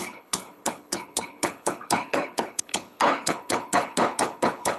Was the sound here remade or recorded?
remade